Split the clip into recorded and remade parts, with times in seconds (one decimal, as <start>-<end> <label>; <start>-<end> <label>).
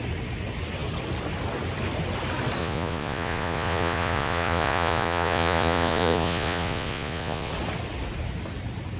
0.0-2.6 recorded; 2.6-7.5 remade; 7.5-9.0 recorded